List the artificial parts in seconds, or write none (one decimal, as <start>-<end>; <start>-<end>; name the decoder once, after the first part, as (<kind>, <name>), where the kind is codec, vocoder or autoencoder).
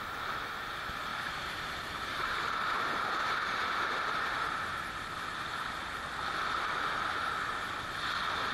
1.1-4.3 (vocoder, BigVGAN v2)